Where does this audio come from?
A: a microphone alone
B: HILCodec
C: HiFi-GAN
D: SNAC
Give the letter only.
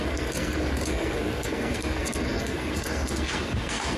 D